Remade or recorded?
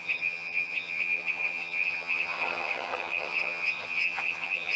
remade